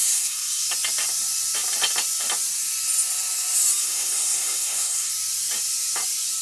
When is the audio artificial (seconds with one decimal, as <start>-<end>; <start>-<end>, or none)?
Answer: 0.0-0.7; 3.8-5.1